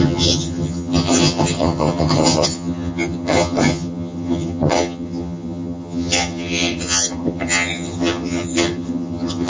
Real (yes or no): no